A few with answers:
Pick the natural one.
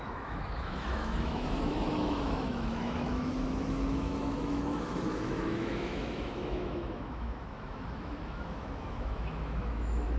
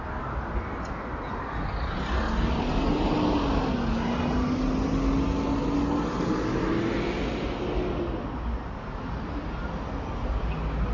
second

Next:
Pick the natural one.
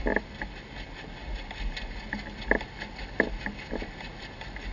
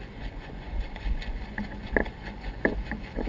first